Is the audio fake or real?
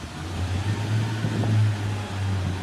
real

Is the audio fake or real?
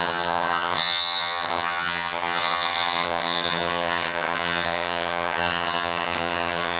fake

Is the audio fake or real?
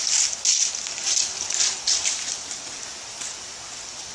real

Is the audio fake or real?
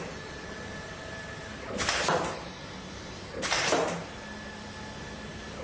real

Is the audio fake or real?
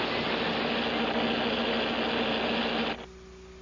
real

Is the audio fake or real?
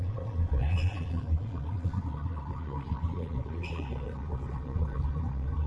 fake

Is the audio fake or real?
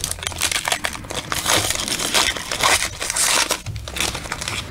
real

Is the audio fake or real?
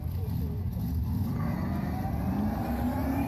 real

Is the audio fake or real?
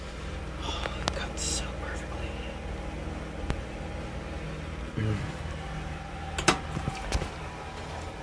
real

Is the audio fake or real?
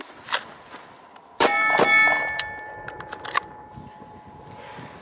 real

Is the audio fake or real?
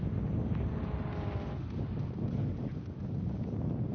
real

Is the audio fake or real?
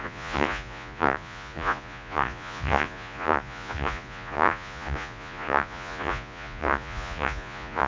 fake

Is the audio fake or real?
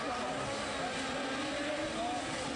real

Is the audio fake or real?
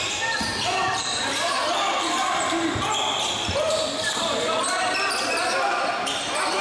fake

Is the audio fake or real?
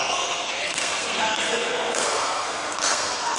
fake